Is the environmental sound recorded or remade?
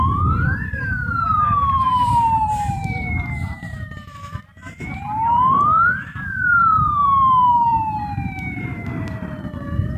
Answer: remade